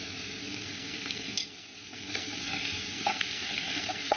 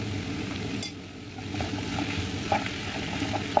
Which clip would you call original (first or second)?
second